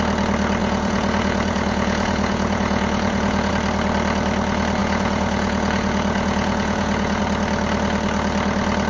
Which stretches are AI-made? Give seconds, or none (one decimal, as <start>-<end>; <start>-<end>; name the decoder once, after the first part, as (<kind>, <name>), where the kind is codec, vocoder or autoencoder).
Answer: 0.6-3.5 (vocoder, Vocos); 4.8-7.2